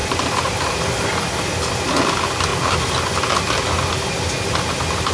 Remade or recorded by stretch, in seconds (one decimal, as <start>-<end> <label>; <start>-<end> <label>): 0.0-0.5 remade; 0.5-5.1 recorded